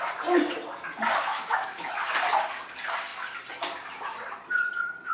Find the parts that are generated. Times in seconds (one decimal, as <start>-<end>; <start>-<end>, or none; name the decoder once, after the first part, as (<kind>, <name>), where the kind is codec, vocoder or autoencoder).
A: 1.3-1.9 (autoencoder, DAC-VAE)